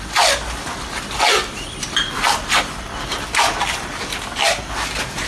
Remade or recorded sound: recorded